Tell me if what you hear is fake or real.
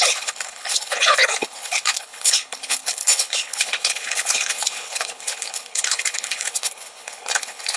fake